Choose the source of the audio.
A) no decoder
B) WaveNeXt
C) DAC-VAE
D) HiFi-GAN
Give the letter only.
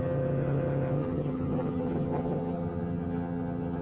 D